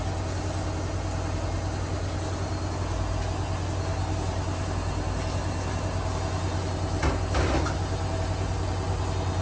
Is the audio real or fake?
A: real